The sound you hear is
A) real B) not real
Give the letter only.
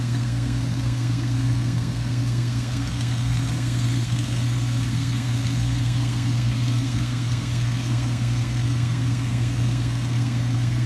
B